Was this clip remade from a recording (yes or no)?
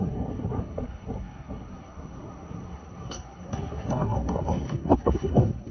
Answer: yes